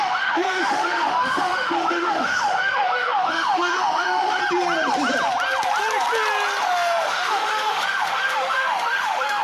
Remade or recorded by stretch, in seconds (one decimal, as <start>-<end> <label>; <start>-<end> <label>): 0.0-4.4 remade; 4.4-6.6 recorded; 6.6-9.4 remade